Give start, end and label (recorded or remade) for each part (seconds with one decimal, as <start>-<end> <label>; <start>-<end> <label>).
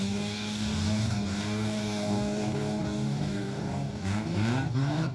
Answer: 0.0-5.1 remade